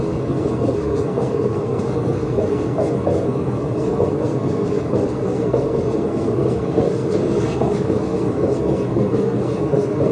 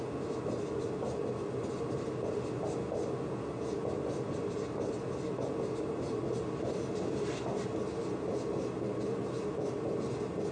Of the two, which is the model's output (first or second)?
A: first